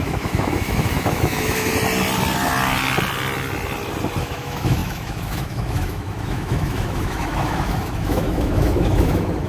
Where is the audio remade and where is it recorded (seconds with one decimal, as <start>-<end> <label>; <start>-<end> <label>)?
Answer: 0.0-1.7 remade; 1.7-4.2 recorded; 4.2-9.5 remade